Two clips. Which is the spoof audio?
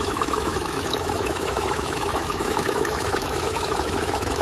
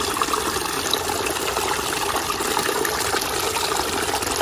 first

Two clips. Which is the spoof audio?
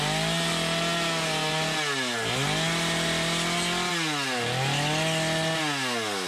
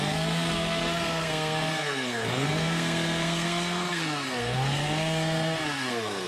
second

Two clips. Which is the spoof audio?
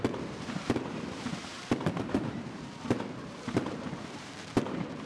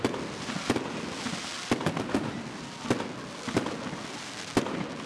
first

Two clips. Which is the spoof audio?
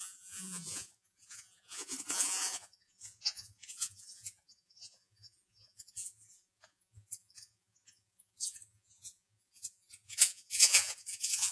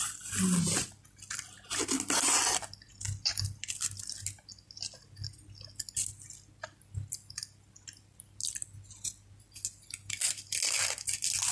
first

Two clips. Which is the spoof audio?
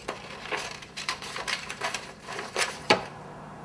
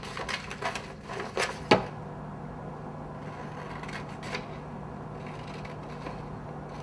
first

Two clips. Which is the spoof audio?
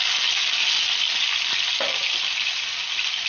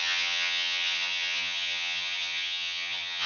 second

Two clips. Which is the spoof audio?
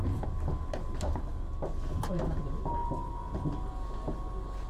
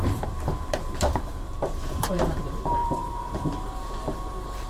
second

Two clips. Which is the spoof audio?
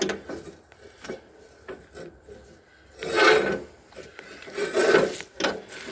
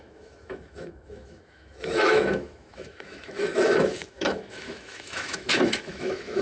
second